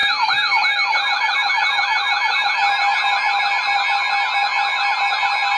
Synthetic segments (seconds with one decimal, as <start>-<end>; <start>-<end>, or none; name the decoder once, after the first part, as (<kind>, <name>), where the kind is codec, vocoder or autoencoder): none